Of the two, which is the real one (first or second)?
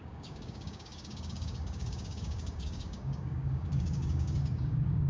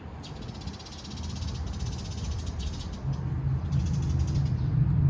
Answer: second